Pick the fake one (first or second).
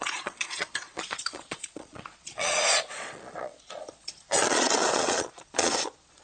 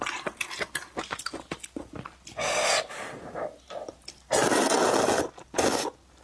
first